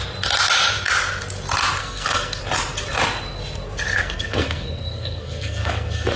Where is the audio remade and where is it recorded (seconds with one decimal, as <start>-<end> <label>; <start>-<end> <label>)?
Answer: 0.0-1.8 recorded; 1.8-2.4 remade; 2.4-3.9 recorded; 3.9-6.2 remade